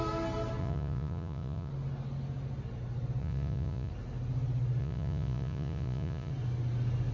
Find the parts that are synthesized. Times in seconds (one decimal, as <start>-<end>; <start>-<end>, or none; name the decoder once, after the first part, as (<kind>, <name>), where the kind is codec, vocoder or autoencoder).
0.6-1.7 (vocoder, Vocos); 3.2-3.9; 4.8-6.3